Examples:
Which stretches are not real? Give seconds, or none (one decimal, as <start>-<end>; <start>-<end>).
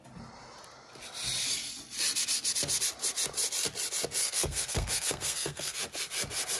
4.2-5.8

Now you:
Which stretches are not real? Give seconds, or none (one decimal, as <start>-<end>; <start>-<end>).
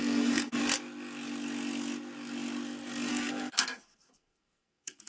0.0-0.6; 3.1-5.1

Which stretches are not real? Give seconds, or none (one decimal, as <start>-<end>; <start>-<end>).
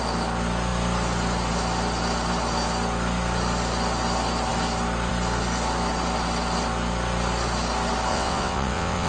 8.1-9.1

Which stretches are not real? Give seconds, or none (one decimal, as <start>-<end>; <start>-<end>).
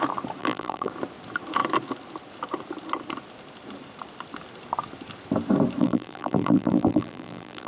0.4-0.9; 5.8-7.7